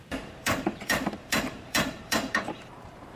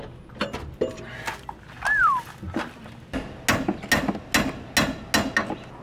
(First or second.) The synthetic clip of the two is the first